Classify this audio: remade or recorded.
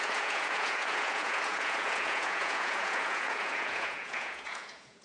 remade